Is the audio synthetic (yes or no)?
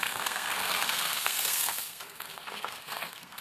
yes